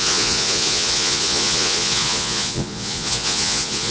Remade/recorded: remade